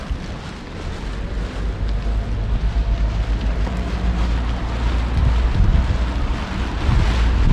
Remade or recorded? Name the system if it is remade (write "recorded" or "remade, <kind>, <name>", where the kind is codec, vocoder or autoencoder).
recorded